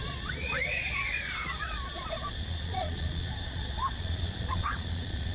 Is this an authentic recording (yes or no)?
no